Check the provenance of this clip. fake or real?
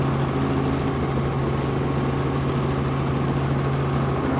real